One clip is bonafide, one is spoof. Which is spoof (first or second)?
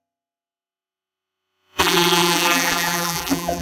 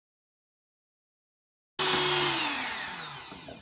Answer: first